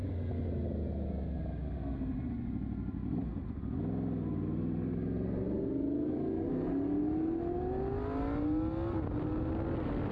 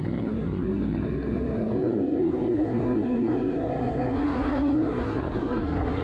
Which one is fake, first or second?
second